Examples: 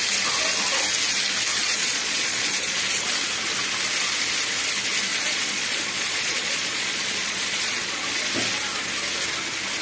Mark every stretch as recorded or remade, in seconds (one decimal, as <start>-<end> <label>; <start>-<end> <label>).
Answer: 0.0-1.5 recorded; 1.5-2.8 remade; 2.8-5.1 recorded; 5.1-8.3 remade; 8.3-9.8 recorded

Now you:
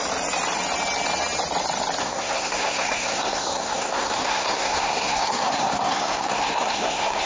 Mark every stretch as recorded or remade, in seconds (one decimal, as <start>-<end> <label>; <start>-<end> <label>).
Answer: 0.0-2.0 recorded; 2.0-7.3 remade

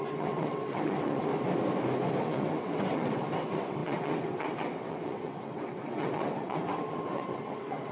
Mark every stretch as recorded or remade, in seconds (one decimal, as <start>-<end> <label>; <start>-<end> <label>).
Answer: 0.0-1.3 remade; 1.3-2.2 recorded; 2.2-7.9 remade

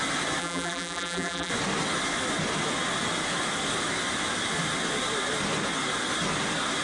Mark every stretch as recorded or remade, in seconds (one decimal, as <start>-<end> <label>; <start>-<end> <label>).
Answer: 0.0-0.4 recorded; 0.4-1.5 remade; 1.5-6.8 recorded

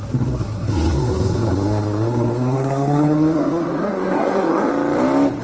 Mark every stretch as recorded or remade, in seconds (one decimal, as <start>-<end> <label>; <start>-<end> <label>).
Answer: 0.0-4.7 remade; 4.7-5.4 recorded

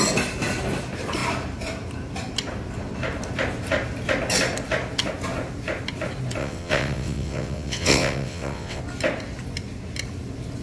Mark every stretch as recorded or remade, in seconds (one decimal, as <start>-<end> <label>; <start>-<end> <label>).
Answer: 0.0-6.4 recorded; 6.4-8.8 remade; 8.8-10.6 recorded